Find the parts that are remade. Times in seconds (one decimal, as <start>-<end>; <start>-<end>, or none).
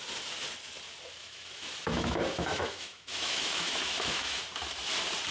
1.2-4.4